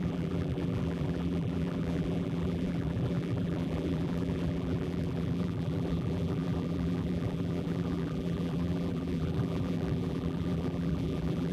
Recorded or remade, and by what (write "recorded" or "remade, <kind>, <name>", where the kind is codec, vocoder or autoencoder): remade, vocoder, BigVGAN v2